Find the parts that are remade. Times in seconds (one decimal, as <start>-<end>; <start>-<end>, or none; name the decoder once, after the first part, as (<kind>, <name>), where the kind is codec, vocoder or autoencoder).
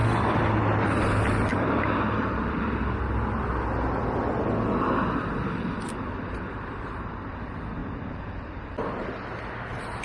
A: 1.5-2.8 (vocoder, BigVGAN v2)